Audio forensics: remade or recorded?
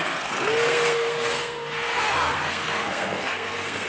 remade